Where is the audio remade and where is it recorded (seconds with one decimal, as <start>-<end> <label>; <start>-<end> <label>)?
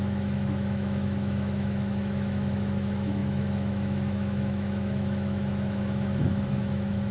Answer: 0.0-7.1 remade